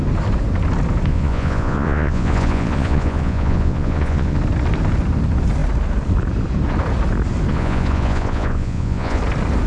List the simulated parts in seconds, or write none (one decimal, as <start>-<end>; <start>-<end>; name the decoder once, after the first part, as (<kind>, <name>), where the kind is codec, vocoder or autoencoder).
1.1-4.4 (vocoder, Vocos); 7.5-9.2